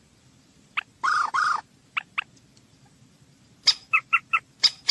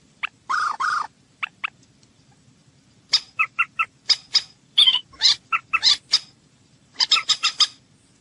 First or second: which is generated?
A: second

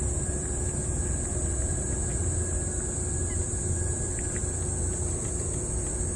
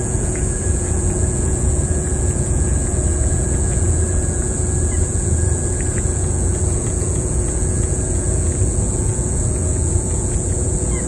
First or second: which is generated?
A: second